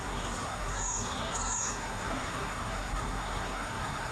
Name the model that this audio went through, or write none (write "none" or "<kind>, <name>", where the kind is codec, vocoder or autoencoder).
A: codec, SNAC